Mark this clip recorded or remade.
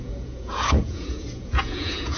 remade